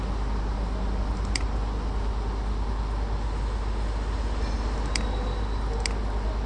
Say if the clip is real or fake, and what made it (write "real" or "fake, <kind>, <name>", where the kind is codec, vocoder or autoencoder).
real